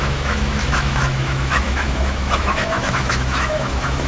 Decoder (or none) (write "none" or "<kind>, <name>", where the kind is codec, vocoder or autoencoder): autoencoder, DAC-VAE